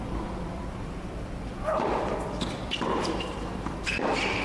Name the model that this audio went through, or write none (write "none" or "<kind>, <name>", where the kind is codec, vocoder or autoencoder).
vocoder, BigVGAN v2